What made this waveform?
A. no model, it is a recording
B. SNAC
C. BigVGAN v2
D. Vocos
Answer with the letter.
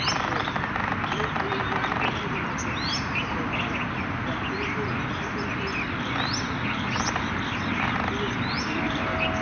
A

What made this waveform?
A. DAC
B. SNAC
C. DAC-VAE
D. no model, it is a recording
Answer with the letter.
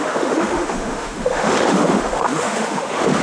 C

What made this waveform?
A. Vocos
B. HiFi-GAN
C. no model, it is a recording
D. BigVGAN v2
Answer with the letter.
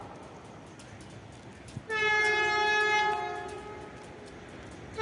C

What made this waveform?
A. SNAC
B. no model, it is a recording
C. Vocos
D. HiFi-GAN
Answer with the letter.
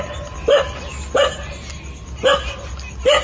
B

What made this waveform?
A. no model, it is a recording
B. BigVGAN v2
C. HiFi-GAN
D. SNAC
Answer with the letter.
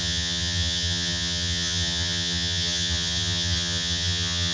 C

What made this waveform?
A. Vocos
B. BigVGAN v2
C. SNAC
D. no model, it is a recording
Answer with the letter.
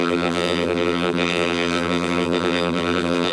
B